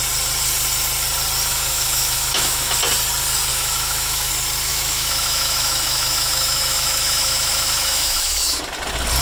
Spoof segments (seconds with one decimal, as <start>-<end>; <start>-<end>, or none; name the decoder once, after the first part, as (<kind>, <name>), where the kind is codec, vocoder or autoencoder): 1.5-2.7 (autoencoder, DAC-VAE); 3.5-4.3; 4.7-8.6